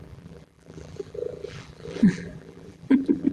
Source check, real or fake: fake